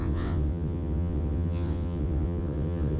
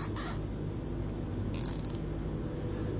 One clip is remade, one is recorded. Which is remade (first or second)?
first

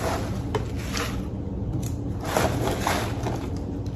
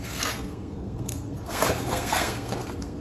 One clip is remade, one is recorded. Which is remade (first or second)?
second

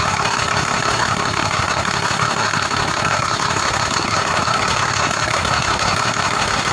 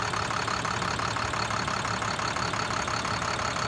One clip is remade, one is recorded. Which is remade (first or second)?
first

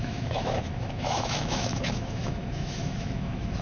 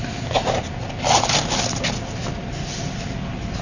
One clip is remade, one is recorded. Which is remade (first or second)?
first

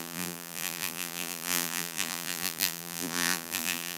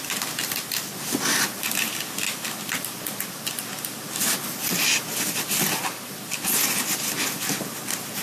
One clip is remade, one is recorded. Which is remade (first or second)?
first